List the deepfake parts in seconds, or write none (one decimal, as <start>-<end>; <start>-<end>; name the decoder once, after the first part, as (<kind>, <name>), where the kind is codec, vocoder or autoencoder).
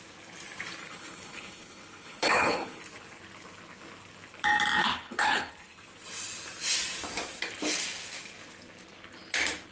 0.8-2.8 (codec, HILCodec); 4.8-5.5